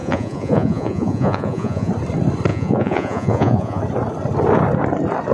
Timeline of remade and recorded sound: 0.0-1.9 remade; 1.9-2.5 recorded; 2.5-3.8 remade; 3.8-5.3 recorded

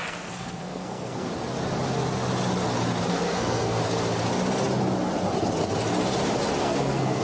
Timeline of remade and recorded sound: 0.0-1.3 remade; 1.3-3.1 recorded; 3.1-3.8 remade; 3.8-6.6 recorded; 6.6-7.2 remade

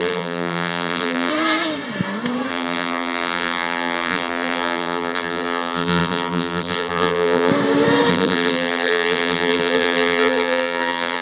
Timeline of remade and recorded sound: 0.0-1.3 remade; 1.3-2.5 recorded; 2.5-7.5 remade; 7.5-8.1 recorded; 8.1-11.2 remade